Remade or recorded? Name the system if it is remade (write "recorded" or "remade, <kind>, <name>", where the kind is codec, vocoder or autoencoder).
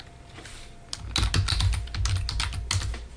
recorded